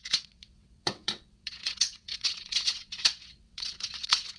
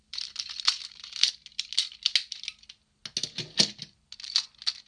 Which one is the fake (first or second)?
first